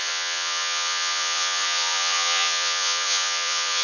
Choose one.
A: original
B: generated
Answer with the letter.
B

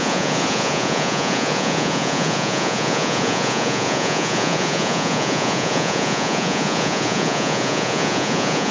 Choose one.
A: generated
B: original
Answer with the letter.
A